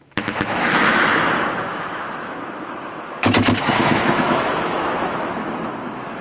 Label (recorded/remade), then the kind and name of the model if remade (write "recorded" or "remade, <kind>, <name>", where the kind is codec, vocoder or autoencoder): remade, autoencoder, DAC-VAE